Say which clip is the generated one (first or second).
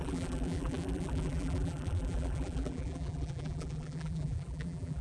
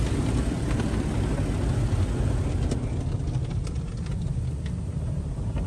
first